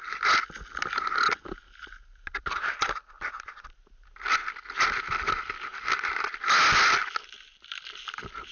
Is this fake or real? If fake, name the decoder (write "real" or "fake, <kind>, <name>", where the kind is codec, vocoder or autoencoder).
real